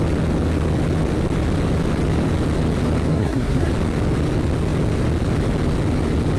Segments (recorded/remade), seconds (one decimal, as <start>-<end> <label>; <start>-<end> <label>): 0.0-3.1 recorded; 3.1-3.7 remade; 3.7-6.4 recorded